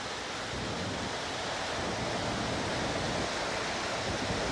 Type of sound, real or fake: real